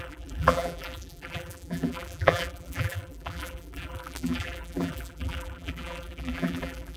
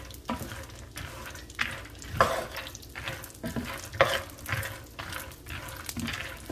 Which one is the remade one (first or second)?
first